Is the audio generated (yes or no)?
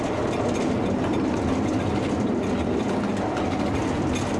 no